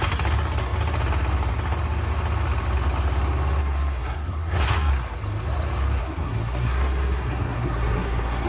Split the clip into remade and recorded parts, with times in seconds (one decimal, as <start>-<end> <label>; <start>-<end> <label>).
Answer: 0.0-3.6 recorded; 3.6-4.9 remade; 4.9-6.0 recorded; 6.0-8.5 remade